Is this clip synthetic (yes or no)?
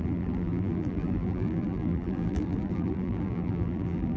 yes